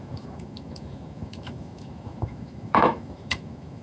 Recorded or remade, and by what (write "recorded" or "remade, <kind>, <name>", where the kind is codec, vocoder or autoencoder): remade, autoencoder, DAC-VAE